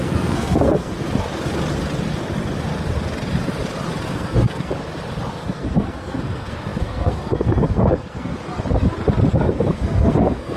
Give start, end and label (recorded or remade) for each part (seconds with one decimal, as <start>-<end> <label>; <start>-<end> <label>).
0.0-0.9 remade; 0.9-4.1 recorded; 4.1-4.7 remade; 4.7-5.3 recorded; 5.3-8.3 remade; 8.3-9.3 recorded; 9.3-10.6 remade